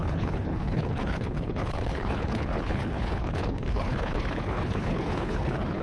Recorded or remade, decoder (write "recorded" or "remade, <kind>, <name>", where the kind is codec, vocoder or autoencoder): remade, codec, HILCodec